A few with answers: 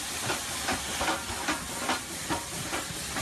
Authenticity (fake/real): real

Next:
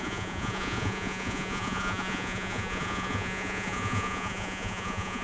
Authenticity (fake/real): fake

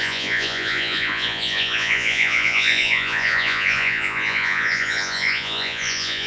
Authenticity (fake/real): fake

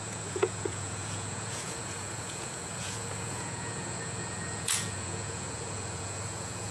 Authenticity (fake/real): fake